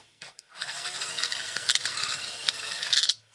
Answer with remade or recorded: remade